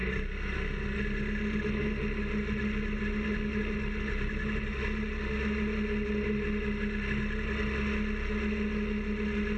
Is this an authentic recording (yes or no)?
yes